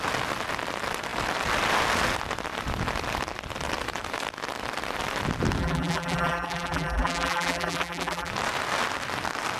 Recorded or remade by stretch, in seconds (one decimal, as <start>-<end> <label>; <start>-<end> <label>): 0.0-5.6 recorded; 5.6-8.3 remade; 8.3-9.6 recorded